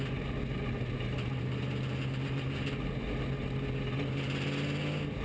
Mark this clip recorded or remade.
recorded